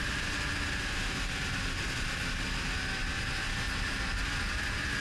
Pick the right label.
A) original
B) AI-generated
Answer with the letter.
A